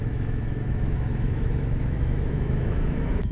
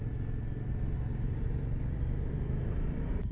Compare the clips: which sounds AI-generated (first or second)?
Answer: first